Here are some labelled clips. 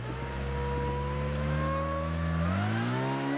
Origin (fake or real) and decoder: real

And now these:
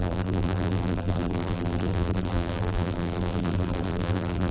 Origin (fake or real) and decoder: fake, vocoder, BigVGAN v2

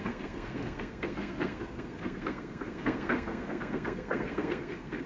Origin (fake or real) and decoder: fake, codec, SNAC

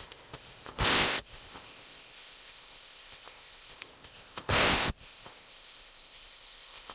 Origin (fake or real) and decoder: fake, codec, ZipCodec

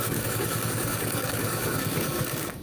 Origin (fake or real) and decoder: fake, codec, DAC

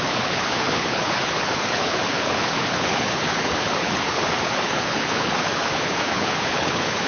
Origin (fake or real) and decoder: fake, codec, HILCodec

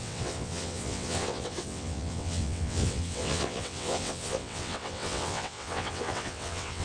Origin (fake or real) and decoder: fake, vocoder, WaveNeXt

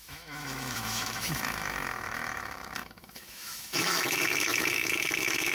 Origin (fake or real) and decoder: fake, autoencoder, DAC-VAE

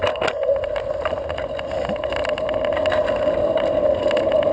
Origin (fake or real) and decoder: real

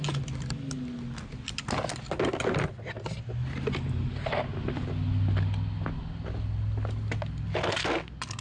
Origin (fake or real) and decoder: real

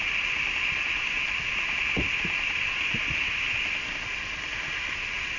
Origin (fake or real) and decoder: real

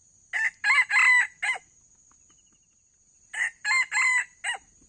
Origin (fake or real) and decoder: real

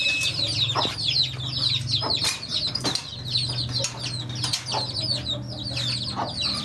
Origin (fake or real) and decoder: real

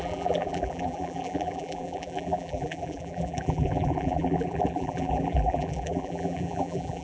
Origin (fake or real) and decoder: fake, vocoder, BigVGAN v2